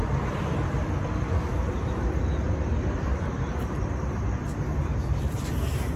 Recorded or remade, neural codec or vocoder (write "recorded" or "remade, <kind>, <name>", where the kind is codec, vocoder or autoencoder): recorded